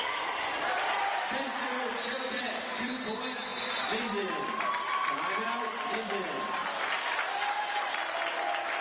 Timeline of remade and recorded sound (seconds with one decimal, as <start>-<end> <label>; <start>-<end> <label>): 0.0-8.0 remade; 8.0-8.8 recorded